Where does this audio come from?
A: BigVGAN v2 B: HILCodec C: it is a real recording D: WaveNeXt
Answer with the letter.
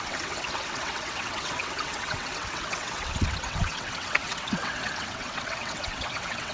D